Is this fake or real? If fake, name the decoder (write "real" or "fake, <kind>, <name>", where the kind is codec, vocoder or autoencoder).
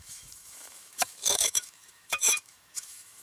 fake, autoencoder, DAC-VAE